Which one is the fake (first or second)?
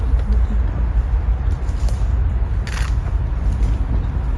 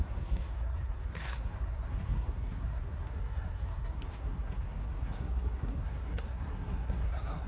second